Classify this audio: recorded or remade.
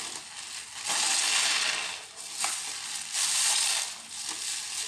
recorded